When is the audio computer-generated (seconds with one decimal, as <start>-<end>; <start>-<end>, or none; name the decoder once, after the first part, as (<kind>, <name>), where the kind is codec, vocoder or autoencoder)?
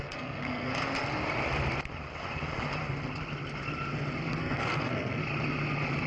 0.0-0.7 (codec, SNAC); 4.4-5.2